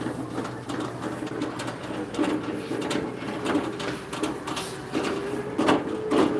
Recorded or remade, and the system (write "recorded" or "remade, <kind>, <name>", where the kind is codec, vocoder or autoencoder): recorded